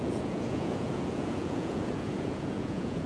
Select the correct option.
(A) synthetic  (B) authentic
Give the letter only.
A